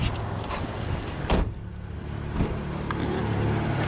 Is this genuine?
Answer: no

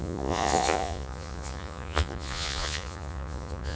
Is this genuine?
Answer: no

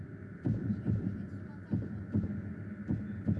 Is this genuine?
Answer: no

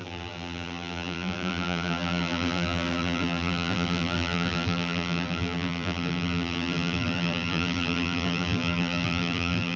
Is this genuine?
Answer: no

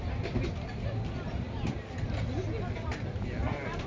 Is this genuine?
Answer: yes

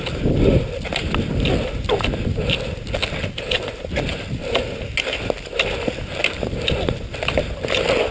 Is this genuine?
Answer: yes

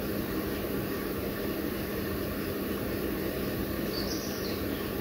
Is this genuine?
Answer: no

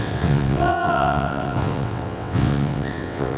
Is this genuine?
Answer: no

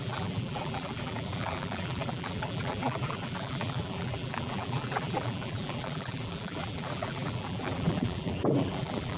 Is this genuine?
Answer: no